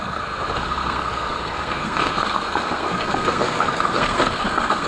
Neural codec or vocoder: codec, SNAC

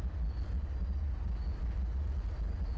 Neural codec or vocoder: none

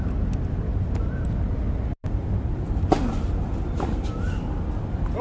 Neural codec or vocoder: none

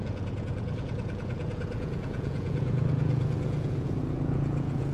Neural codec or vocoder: vocoder, Vocos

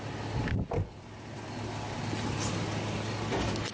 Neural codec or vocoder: none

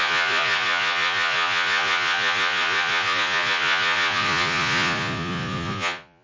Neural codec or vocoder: vocoder, Vocos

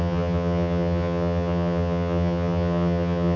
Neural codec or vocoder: vocoder, HiFi-GAN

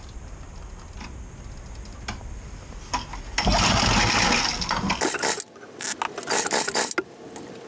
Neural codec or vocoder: none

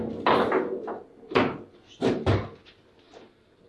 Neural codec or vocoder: none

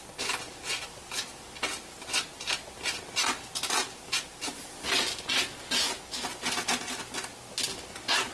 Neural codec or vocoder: none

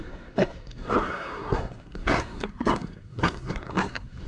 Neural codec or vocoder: codec, SNAC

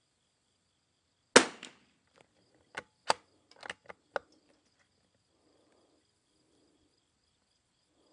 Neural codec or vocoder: none